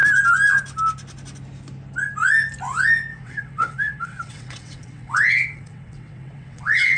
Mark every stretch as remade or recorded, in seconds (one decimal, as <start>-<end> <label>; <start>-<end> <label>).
0.0-3.1 recorded; 3.1-7.0 remade

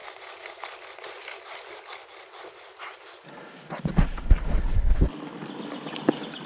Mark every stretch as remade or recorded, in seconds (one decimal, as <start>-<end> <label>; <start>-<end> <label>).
0.0-6.5 recorded

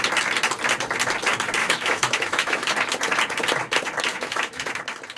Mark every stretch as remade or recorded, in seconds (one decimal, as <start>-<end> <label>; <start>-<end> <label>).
0.0-1.6 recorded; 1.6-2.7 remade; 2.7-4.1 recorded; 4.1-4.7 remade; 4.7-5.2 recorded

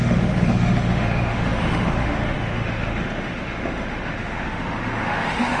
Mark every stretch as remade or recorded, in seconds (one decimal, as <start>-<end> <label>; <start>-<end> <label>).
0.0-5.6 remade

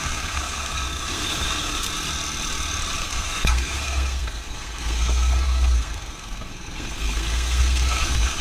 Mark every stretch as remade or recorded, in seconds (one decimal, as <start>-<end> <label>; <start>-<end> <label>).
0.0-1.9 remade; 1.9-3.0 recorded; 3.0-8.4 remade

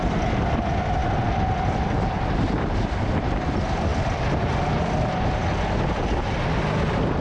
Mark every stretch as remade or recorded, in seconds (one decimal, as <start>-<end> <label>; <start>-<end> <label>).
0.0-7.2 recorded